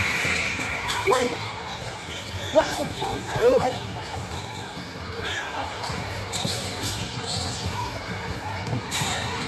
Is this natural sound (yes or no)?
no